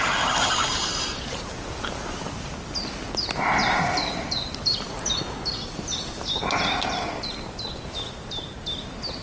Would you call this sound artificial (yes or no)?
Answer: no